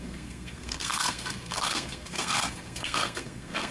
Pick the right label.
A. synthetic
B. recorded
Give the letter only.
A